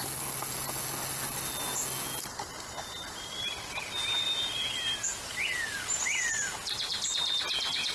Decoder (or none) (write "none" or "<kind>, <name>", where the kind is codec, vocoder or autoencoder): none